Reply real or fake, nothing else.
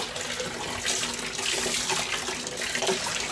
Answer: real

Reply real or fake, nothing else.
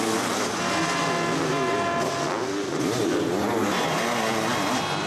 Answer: real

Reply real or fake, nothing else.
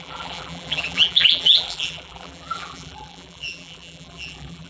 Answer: fake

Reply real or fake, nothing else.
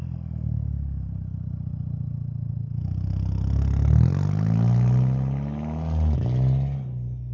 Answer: real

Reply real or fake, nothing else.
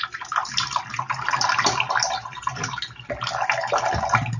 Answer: real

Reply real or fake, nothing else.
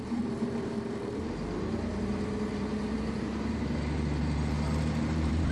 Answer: fake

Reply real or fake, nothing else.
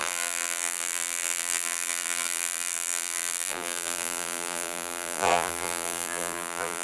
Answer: fake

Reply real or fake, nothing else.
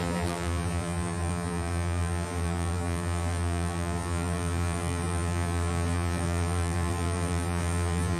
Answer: fake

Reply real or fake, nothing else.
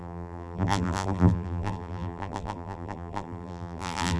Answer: fake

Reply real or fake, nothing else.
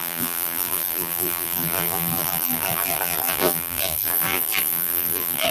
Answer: fake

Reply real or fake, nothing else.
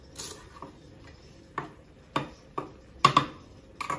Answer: real